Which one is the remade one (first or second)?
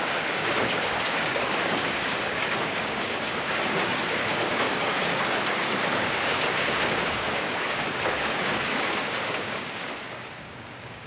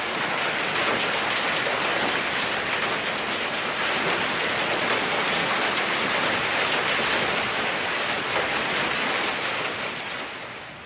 first